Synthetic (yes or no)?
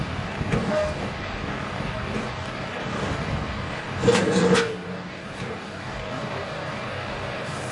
yes